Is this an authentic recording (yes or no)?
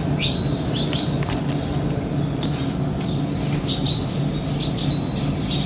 yes